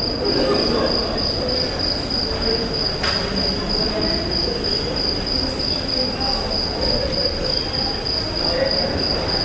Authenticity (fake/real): real